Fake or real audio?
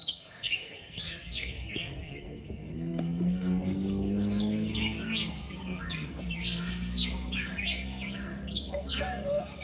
fake